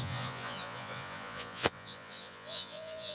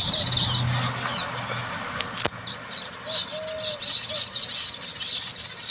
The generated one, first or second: first